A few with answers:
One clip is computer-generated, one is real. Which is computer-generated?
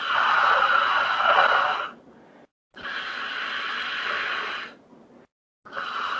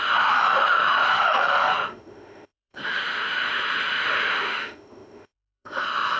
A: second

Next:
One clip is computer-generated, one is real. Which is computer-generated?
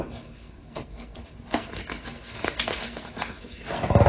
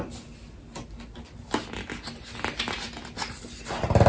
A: first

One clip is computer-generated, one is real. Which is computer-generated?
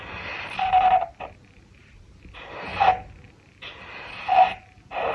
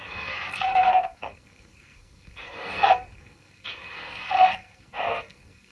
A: second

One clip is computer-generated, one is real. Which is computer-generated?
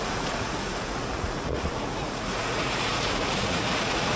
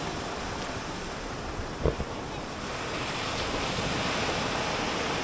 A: first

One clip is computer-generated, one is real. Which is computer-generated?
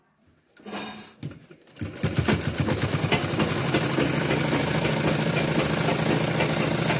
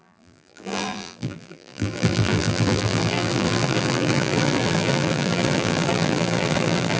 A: second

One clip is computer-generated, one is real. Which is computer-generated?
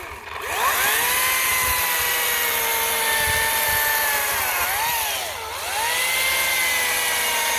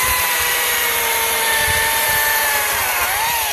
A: second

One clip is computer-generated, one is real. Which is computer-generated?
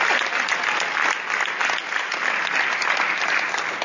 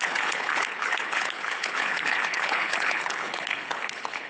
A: second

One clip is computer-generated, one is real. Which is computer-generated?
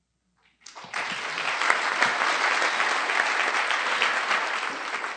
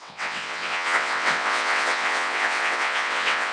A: second